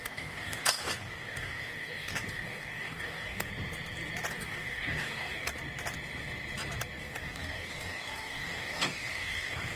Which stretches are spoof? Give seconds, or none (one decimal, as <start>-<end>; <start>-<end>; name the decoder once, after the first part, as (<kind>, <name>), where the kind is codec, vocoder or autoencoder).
0.0-3.5 (codec, DAC); 4.3-5.5; 7.0-9.8